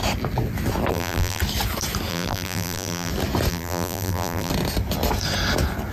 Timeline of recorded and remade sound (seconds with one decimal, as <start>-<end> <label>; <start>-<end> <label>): 0.0-0.9 recorded; 0.9-1.4 remade; 1.4-2.1 recorded; 2.1-3.1 remade; 3.1-3.5 recorded; 3.5-4.5 remade; 4.5-5.9 recorded